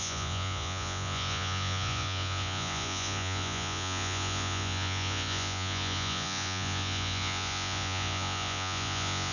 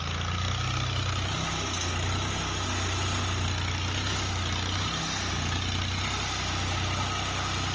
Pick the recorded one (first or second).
second